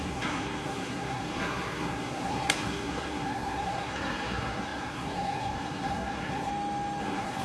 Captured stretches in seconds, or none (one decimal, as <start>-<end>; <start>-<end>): 6.5-7.0